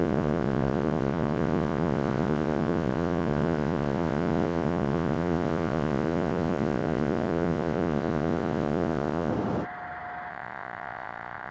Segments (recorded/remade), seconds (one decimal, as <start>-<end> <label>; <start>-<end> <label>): 0.0-9.3 remade; 9.3-10.3 recorded; 10.3-11.5 remade